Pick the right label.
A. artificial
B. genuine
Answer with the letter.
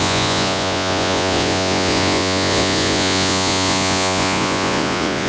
A